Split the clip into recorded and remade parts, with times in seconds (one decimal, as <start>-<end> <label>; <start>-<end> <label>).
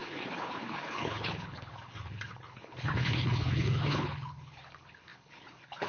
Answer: 0.0-5.9 remade